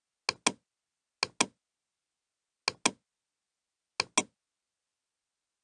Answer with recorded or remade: recorded